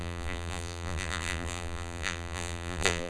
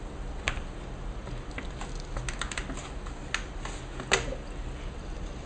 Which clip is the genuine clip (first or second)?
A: second